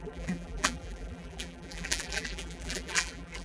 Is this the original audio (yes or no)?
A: no